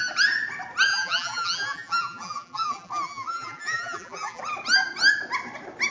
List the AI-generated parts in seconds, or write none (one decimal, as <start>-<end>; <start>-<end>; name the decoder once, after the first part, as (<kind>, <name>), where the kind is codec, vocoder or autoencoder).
0.9-4.4 (vocoder, BigVGAN v2)